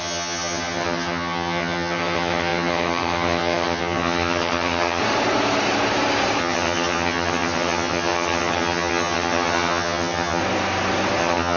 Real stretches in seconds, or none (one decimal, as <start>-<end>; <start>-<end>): 5.0-6.4; 10.4-11.2